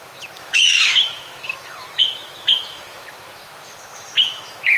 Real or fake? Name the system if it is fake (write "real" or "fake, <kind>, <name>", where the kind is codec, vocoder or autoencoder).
fake, autoencoder, DAC-VAE